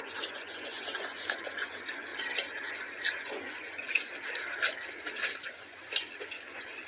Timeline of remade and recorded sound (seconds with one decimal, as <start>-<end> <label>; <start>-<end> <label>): 0.0-2.1 remade; 2.1-2.7 recorded; 2.7-4.1 remade; 4.1-5.0 recorded; 5.0-6.9 remade